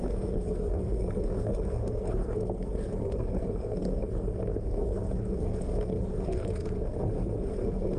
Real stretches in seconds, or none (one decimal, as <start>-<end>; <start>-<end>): none